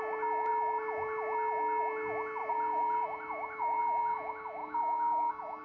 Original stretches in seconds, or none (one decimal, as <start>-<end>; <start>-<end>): 0.0-2.4; 3.8-5.6